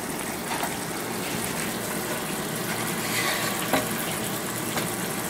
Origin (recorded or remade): recorded